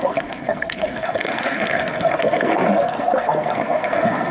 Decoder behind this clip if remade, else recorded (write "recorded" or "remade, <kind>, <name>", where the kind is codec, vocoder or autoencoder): remade, codec, SNAC